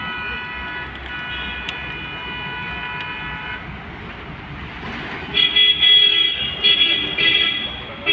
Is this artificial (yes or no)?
no